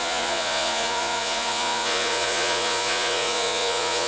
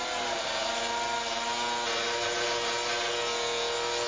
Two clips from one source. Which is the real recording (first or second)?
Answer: second